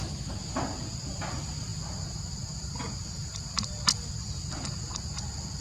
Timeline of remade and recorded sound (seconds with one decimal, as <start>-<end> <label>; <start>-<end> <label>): 0.0-5.6 recorded